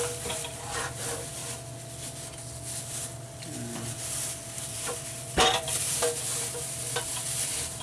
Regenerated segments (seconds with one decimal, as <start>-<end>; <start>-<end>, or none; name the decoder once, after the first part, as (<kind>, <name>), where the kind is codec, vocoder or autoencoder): 0.0-1.4 (vocoder, BigVGAN v2); 4.7-7.8